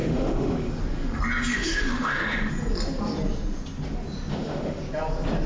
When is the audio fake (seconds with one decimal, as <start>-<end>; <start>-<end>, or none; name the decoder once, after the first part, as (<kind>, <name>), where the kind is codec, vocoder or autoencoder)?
0.0-0.7 (autoencoder, DAC-VAE); 1.5-2.5; 4.3-4.8

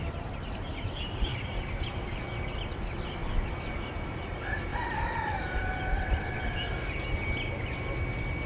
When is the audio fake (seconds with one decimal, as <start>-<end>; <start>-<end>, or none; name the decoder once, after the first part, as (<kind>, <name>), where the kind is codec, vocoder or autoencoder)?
1.3-2.2 (vocoder, BigVGAN v2); 4.7-5.7